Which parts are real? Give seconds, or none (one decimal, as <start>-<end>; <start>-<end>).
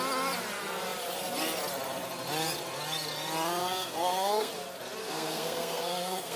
0.0-3.6; 4.5-5.0